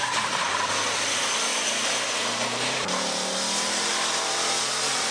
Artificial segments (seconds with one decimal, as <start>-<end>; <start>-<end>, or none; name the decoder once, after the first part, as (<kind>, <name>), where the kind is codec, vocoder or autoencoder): none